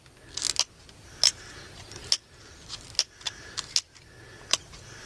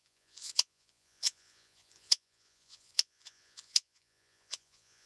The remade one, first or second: second